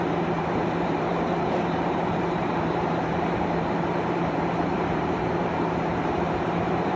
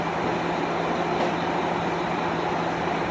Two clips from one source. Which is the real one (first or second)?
second